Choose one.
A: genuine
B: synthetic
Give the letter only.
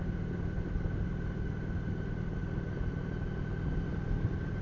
A